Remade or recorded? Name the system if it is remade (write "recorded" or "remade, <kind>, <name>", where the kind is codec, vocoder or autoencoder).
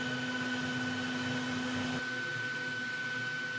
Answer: recorded